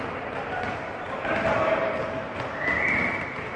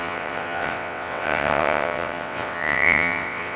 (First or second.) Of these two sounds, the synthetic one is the second